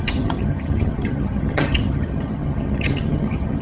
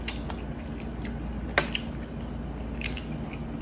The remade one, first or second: first